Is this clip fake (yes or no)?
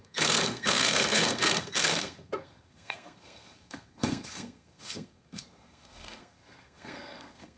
yes